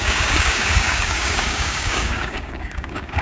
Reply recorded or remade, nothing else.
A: remade